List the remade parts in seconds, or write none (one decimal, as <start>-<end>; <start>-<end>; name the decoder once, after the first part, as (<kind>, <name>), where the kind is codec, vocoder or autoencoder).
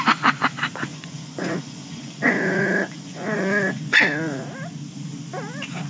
0.9-4.4 (vocoder, Vocos)